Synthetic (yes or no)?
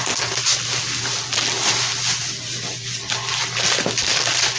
no